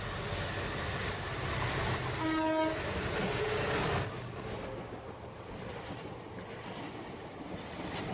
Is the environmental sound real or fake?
real